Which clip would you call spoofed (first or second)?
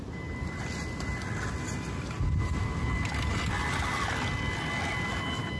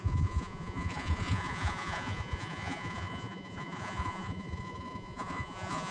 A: second